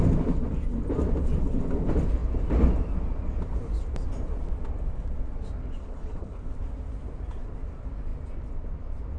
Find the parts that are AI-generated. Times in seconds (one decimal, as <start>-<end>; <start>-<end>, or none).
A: 5.8-6.4